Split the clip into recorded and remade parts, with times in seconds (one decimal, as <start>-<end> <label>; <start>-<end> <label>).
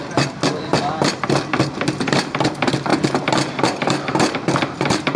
0.0-5.2 recorded